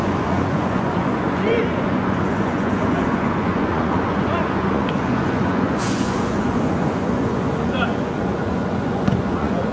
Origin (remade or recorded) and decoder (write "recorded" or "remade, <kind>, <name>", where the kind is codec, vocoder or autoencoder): remade, vocoder, Vocos